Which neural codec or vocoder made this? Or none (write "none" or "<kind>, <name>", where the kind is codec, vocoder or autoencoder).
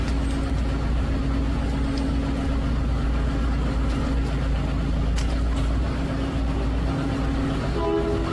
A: none